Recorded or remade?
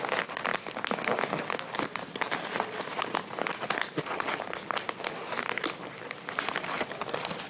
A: recorded